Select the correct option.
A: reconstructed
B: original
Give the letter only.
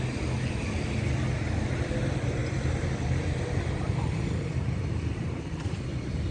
B